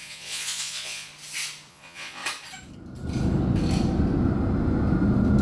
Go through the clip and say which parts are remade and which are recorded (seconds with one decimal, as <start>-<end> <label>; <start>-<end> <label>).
0.0-1.1 remade; 1.1-1.7 recorded; 1.7-2.2 remade; 2.2-5.4 recorded